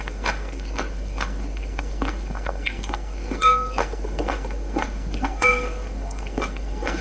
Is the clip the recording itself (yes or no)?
no